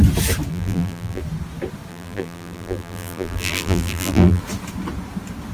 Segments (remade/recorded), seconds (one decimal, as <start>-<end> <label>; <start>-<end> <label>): 0.0-0.5 recorded; 0.5-1.2 remade; 1.2-1.9 recorded; 1.9-4.4 remade; 4.4-5.5 recorded